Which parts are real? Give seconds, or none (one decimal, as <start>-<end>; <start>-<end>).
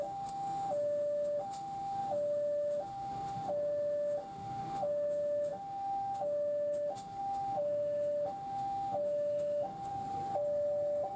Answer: 9.9-11.2